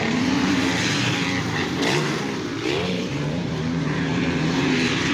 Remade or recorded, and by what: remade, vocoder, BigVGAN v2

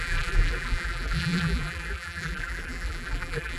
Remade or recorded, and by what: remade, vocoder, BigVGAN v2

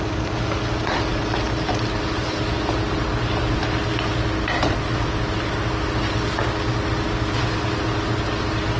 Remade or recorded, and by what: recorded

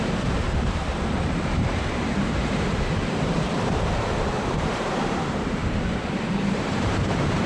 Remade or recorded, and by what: remade, vocoder, BigVGAN v2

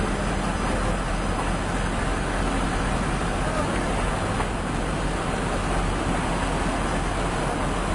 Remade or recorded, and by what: recorded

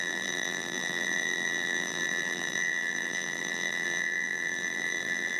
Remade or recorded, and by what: remade, vocoder, BigVGAN v2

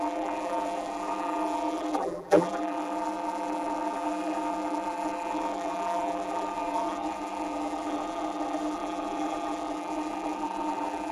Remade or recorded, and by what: remade, vocoder, BigVGAN v2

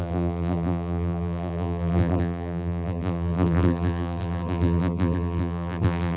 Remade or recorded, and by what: remade, vocoder, BigVGAN v2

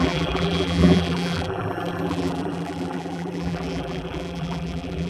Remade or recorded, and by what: remade, vocoder, BigVGAN v2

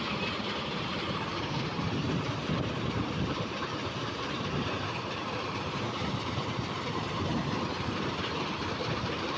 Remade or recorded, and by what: remade, vocoder, BigVGAN v2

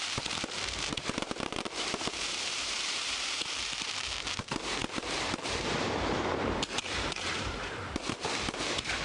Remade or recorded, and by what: remade, vocoder, BigVGAN v2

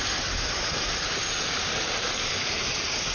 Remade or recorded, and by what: remade, vocoder, BigVGAN v2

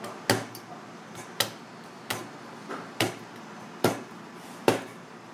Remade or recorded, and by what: recorded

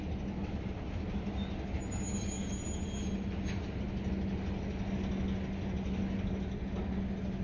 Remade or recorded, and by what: recorded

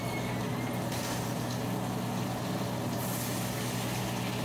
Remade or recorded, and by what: recorded